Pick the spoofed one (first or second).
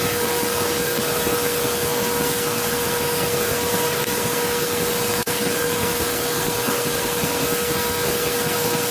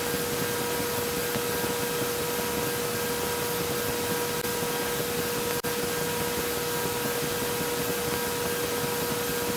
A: first